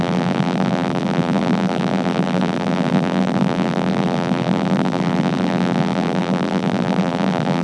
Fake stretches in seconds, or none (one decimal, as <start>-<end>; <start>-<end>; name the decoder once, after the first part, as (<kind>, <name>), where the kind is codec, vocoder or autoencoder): 0.0-7.6 (vocoder, BigVGAN v2)